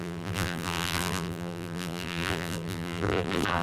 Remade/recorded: remade